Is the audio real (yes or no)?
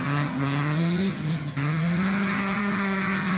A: no